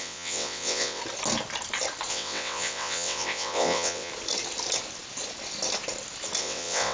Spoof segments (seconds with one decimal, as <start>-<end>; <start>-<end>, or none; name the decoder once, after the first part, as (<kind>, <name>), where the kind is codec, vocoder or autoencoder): 0.0-1.0 (vocoder, WaveNeXt); 2.1-4.1; 6.4-6.9